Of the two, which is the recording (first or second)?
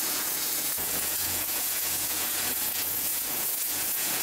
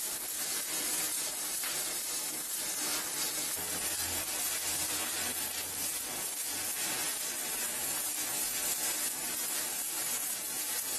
second